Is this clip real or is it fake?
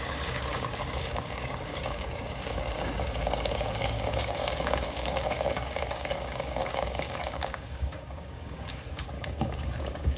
fake